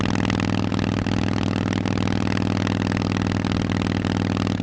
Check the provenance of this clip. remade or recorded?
recorded